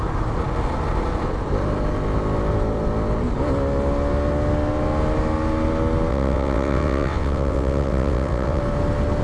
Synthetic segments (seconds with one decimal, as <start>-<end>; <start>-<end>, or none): 6.1-8.6